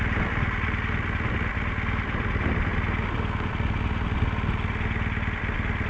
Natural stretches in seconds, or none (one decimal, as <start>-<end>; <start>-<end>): 0.0-5.9